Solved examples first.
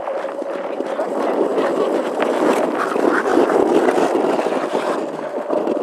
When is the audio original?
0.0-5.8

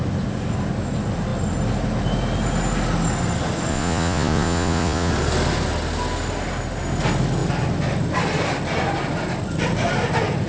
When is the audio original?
0.0-3.7; 5.1-10.5

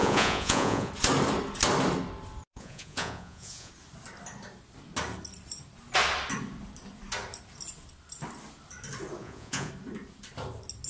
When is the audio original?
0.9-2.5; 3.7-9.2; 9.7-10.9

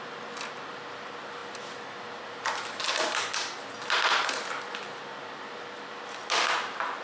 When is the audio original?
0.0-7.0

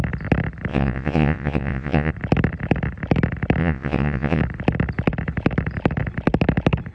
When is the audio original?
0.0-0.7; 2.1-3.6; 4.4-6.9